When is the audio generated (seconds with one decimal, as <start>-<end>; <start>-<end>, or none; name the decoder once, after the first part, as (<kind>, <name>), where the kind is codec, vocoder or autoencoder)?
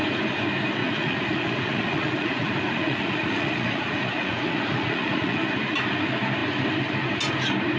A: 0.8-5.5 (vocoder, Vocos)